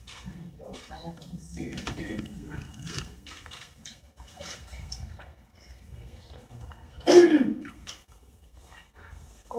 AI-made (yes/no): yes